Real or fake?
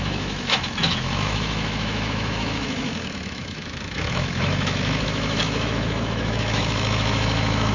fake